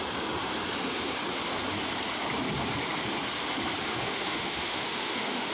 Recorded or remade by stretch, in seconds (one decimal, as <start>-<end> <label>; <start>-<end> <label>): 0.0-3.9 recorded; 3.9-5.5 remade